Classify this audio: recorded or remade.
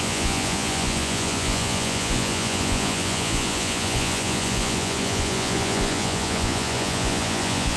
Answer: remade